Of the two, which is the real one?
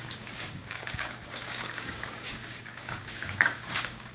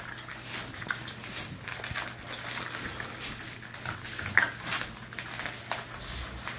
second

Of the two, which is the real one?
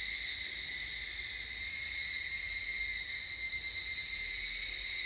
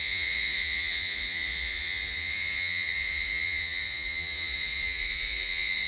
first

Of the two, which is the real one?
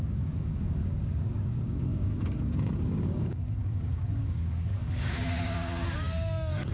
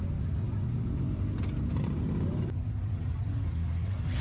second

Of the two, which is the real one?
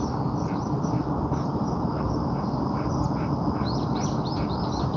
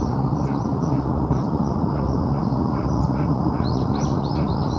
first